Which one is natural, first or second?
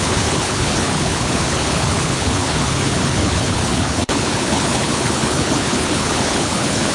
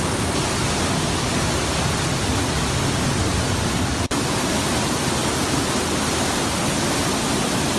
second